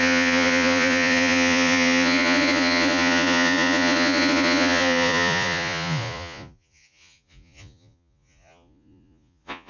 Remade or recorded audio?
remade